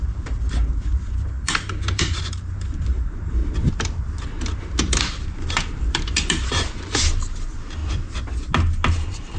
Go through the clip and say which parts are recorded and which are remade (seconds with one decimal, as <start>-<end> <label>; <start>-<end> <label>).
0.0-3.4 remade; 3.4-5.0 recorded; 5.0-7.8 remade; 7.8-8.9 recorded; 8.9-9.4 remade